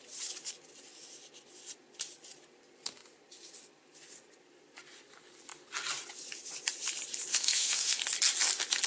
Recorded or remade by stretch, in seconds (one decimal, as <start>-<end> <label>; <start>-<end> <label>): 0.0-7.3 recorded; 7.3-8.0 remade; 8.0-8.9 recorded